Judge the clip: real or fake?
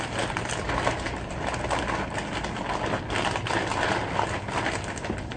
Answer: real